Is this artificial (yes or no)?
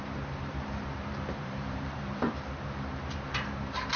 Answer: yes